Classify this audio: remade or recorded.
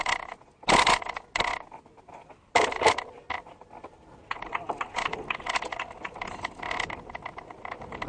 recorded